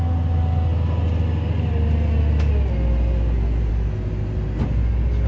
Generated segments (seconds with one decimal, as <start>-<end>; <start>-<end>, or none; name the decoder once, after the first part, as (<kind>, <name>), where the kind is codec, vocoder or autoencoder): none